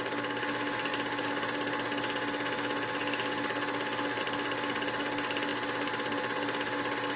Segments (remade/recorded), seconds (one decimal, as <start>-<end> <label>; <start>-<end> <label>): 0.0-7.2 recorded